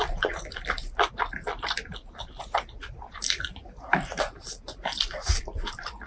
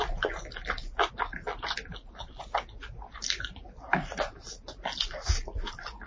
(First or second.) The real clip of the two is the second